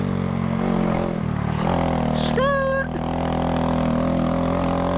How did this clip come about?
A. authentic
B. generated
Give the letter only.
A